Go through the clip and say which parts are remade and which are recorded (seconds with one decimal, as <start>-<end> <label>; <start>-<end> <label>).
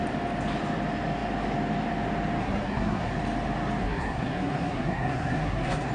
0.0-2.4 recorded; 2.4-3.1 remade; 3.1-3.8 recorded; 3.8-5.9 remade